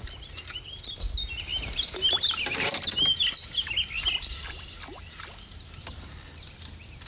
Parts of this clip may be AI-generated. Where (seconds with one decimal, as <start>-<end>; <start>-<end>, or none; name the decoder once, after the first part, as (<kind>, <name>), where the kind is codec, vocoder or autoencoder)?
0.0-1.5 (vocoder, BigVGAN v2); 5.0-7.1